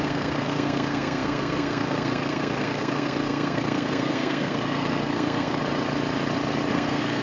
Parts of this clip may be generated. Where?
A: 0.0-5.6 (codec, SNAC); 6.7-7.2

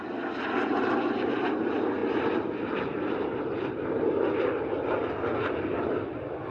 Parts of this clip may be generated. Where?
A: none

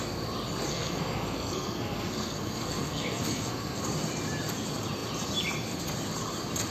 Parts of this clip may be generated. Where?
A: 0.7-3.8 (codec, SNAC)

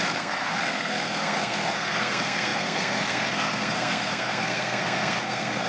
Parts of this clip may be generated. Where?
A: 0.0-5.7 (codec, SNAC)

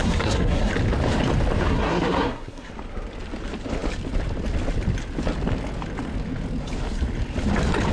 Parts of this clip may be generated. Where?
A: 0.0-0.7 (codec, SNAC); 1.7-2.7

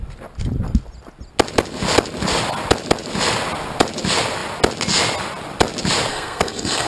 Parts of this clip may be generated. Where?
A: 6.1-6.9 (codec, SNAC)